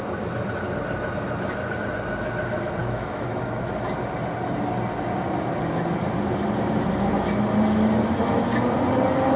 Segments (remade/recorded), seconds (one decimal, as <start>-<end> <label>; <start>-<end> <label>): 0.0-2.8 recorded; 2.8-3.3 remade; 3.3-9.4 recorded